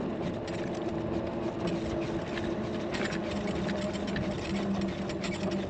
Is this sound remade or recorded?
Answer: recorded